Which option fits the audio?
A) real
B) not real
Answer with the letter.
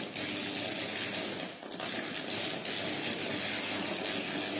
A